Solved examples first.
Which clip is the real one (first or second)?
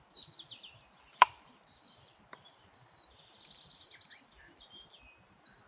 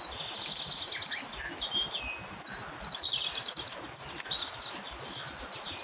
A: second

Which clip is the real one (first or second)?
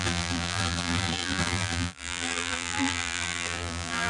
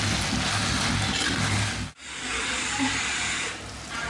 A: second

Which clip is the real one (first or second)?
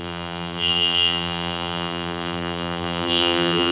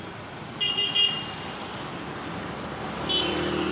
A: second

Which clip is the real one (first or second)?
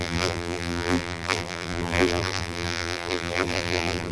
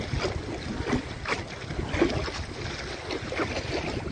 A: second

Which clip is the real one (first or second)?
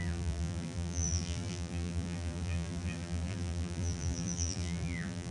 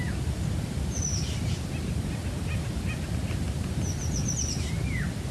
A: second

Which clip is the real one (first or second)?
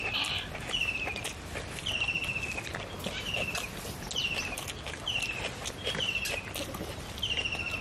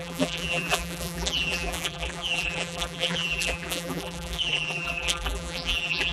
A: first